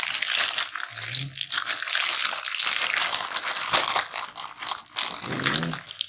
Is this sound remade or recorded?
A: recorded